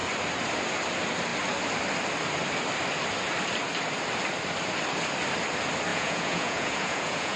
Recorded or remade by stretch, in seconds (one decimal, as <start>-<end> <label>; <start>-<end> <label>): 0.0-5.9 recorded; 5.9-7.4 remade